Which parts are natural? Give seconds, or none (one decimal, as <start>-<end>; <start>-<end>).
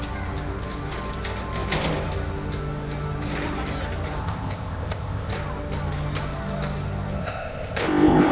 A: 0.0-4.2; 5.3-7.2